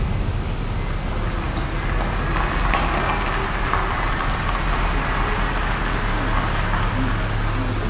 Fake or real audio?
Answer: real